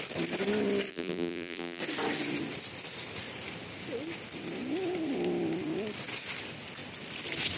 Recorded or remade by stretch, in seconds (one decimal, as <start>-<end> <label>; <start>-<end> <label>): 0.0-0.9 recorded; 0.9-1.8 remade; 1.8-7.6 recorded